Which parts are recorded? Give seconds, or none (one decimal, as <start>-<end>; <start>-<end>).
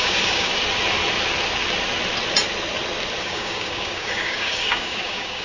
0.5-3.2